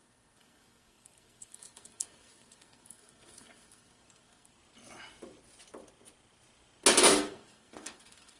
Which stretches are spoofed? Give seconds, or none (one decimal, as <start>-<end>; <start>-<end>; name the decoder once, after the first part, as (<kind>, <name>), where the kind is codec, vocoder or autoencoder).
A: 0.0-4.6 (codec, SNAC); 7.0-8.4